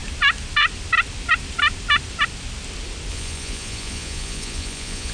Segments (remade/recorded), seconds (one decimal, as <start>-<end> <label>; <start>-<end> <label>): 0.0-3.1 recorded; 3.1-5.1 remade